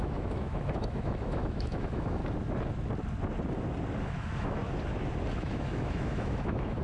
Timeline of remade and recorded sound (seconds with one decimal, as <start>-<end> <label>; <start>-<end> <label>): 0.0-2.2 remade; 2.2-4.0 recorded; 4.0-4.6 remade; 4.6-5.3 recorded; 5.3-6.8 remade